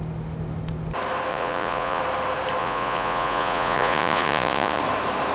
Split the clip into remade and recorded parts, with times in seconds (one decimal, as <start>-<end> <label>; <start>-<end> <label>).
0.0-1.3 recorded; 1.3-2.0 remade; 2.0-2.6 recorded; 2.6-4.8 remade; 4.8-5.3 recorded